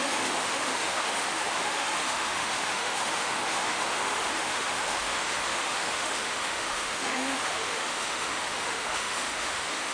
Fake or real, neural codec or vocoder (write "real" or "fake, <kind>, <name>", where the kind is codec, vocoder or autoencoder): fake, autoencoder, DAC-VAE